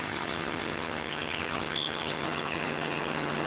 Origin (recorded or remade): remade